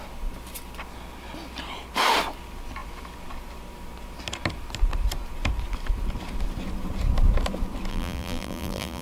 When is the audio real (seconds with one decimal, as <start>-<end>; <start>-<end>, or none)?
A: 0.0-7.9